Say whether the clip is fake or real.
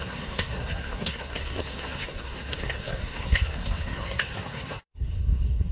fake